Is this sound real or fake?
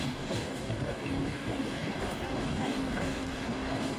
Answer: fake